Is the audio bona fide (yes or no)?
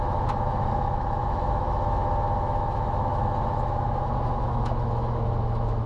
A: no